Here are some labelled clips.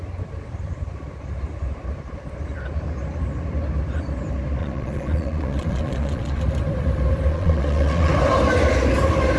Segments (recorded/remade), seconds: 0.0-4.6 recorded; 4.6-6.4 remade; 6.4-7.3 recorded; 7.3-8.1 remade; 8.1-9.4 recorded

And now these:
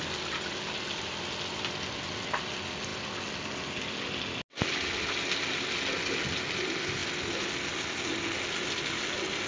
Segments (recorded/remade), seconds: 0.0-9.5 recorded